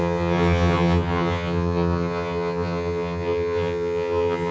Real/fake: fake